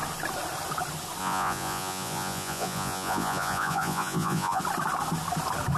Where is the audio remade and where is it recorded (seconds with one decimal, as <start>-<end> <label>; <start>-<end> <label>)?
0.0-1.2 recorded; 1.2-4.6 remade; 4.6-5.8 recorded